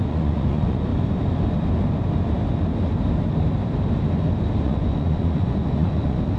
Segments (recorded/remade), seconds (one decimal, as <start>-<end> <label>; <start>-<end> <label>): 0.0-0.9 remade; 0.9-4.6 recorded; 4.6-6.4 remade